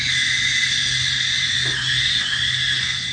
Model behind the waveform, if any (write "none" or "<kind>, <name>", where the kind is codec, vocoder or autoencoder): none